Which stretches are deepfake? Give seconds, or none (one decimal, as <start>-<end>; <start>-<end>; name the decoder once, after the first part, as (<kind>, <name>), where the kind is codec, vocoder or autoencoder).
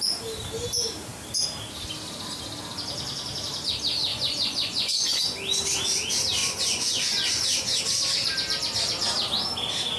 4.1-5.2 (vocoder, Vocos); 6.4-7.8